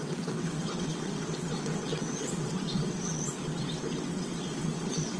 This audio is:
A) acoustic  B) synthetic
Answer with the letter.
B